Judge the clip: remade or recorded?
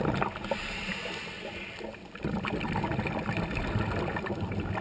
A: recorded